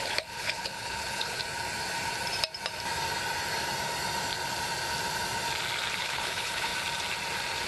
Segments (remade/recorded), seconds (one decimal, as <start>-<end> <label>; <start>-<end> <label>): 0.0-1.4 remade; 1.4-6.0 recorded; 6.0-6.7 remade; 6.7-7.7 recorded